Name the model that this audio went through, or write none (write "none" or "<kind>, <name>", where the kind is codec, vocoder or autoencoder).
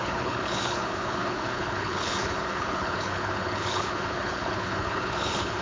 codec, HILCodec